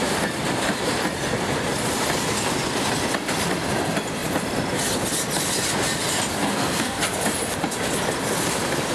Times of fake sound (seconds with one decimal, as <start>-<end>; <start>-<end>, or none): 6.4-7.0